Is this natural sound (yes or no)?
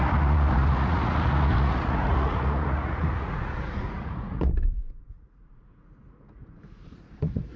no